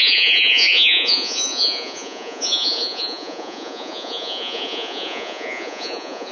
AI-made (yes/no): yes